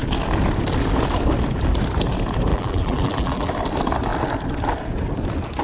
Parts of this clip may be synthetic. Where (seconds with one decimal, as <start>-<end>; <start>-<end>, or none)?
2.5-3.5